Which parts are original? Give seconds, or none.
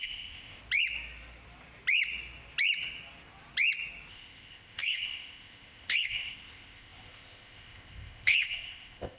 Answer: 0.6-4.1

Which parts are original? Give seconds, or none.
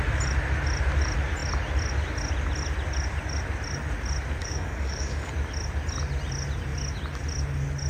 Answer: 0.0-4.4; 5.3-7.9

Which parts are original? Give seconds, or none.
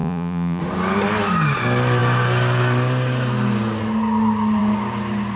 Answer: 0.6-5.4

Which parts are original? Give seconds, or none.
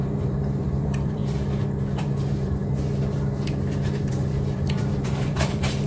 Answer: 1.2-2.0; 2.6-4.1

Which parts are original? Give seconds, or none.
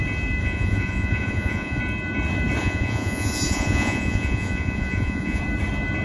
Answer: 0.0-0.4; 1.8-2.6; 5.4-6.0